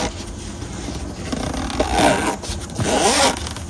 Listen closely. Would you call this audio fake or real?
real